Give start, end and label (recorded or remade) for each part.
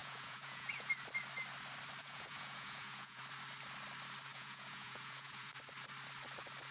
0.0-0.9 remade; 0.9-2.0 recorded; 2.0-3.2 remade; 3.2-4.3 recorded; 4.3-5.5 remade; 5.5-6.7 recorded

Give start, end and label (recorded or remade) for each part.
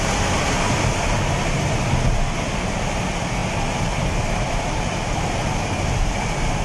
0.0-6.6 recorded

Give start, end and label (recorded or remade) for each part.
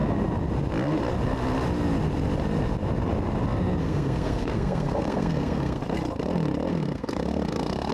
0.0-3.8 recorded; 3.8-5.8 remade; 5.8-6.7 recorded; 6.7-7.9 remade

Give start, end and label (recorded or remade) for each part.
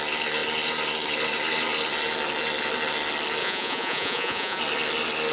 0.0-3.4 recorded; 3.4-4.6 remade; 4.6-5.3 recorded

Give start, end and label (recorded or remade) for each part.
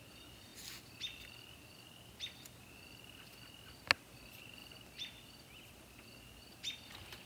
0.0-7.3 recorded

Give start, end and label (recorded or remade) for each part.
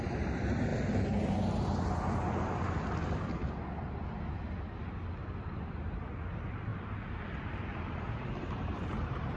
0.0-0.7 remade; 0.7-5.4 recorded; 5.4-6.7 remade; 6.7-7.4 recorded; 7.4-9.4 remade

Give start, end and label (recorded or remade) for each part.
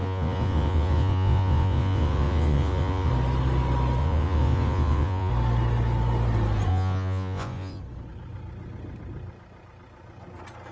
0.0-3.1 remade; 3.1-4.0 recorded; 4.0-5.3 remade; 5.3-6.7 recorded; 6.7-7.8 remade; 7.8-10.7 recorded